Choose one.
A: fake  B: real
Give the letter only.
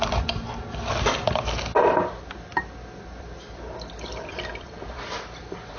A